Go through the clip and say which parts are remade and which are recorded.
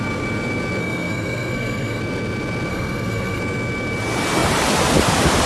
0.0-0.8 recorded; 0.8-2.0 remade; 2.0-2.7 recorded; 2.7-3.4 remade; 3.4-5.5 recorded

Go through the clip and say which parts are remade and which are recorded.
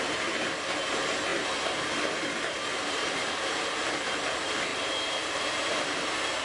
0.0-2.7 recorded; 2.7-3.4 remade; 3.4-4.7 recorded; 4.7-5.8 remade; 5.8-6.4 recorded